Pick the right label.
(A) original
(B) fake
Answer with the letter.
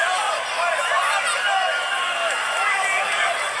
A